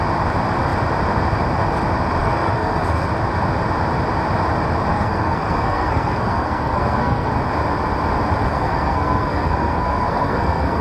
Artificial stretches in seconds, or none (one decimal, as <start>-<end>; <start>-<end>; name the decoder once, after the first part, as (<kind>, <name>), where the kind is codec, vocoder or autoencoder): 2.2-3.1 (codec, SNAC); 4.9-7.3; 8.5-10.8